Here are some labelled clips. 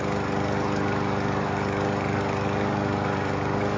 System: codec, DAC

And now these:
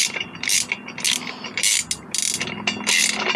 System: none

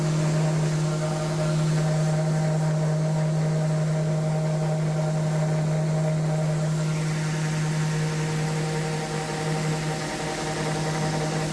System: none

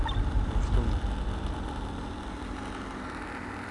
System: none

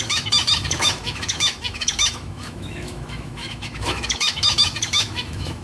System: autoencoder, DAC-VAE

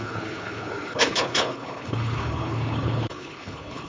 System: codec, HILCodec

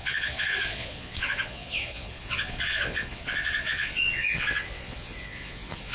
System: vocoder, Vocos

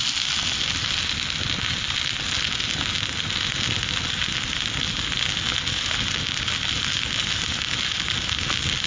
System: none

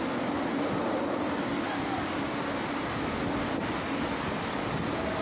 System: none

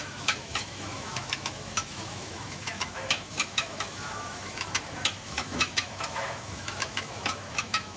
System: autoencoder, DAC-VAE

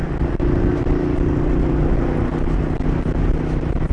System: none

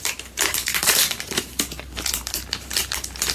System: vocoder, BigVGAN v2